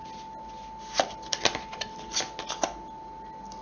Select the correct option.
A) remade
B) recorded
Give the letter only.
B